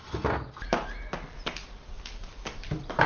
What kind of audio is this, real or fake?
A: real